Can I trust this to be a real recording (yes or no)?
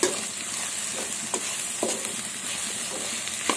yes